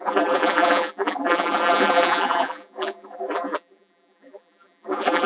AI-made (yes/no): yes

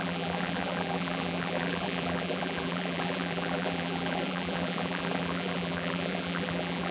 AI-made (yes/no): yes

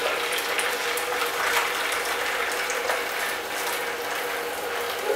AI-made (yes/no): no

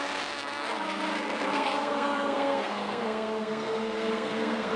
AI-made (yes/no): yes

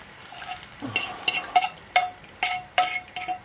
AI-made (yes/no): no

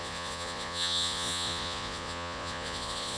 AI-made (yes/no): yes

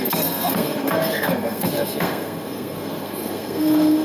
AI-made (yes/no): yes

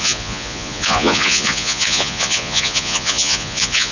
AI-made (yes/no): yes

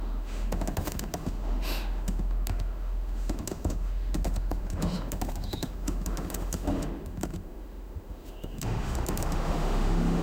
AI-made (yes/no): yes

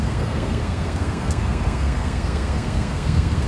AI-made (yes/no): yes